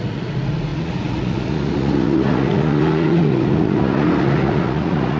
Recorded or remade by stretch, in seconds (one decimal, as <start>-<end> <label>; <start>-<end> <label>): 0.0-5.2 remade